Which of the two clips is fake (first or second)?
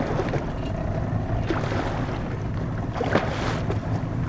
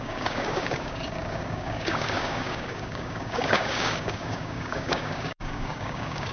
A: second